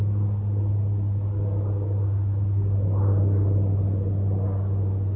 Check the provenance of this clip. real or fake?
real